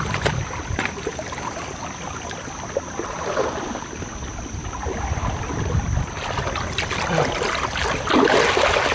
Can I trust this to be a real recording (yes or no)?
yes